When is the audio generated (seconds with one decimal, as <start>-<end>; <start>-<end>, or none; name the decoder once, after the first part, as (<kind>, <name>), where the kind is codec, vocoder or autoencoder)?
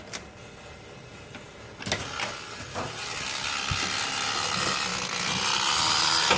none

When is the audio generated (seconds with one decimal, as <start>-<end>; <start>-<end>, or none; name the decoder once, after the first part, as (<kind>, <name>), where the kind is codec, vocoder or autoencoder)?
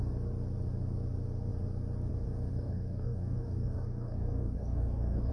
2.5-5.3 (codec, DAC)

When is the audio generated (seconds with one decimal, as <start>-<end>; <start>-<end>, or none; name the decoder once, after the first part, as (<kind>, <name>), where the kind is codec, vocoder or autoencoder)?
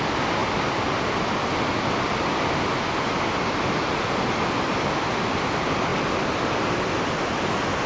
none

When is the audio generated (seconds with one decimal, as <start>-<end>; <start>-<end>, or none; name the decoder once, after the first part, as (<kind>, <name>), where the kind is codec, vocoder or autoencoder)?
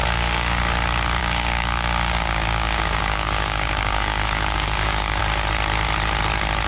0.0-0.6 (codec, DAC); 1.2-5.2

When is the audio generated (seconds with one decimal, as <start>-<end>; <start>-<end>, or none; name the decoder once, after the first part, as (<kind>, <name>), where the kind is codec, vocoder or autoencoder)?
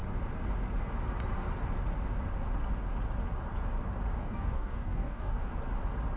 4.2-5.4 (codec, DAC)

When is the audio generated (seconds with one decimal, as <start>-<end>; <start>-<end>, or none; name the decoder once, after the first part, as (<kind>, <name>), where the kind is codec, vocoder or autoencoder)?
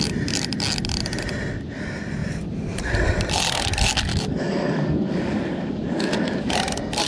4.1-6.5 (codec, DAC)